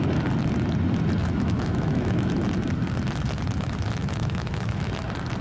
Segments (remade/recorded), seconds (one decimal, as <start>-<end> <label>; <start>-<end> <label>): 0.0-1.2 recorded; 1.2-2.3 remade; 2.3-4.0 recorded; 4.0-4.9 remade; 4.9-5.4 recorded